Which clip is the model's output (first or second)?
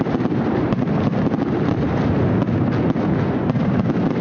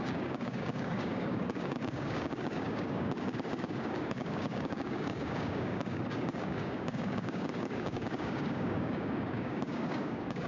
second